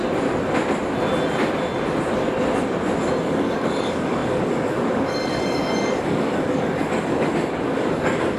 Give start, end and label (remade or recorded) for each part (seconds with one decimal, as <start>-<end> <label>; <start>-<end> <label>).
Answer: 0.0-3.2 recorded; 3.2-8.4 remade